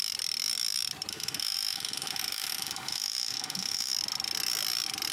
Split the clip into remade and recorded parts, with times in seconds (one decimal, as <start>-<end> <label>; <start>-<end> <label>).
0.0-1.1 recorded; 1.1-3.9 remade; 3.9-5.1 recorded